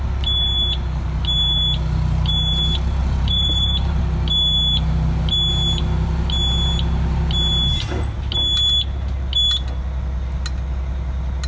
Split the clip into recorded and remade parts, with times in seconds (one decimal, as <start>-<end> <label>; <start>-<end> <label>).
0.0-3.0 recorded; 3.0-4.0 remade; 4.0-11.5 recorded